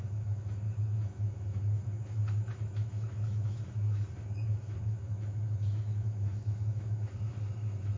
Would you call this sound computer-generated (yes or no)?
yes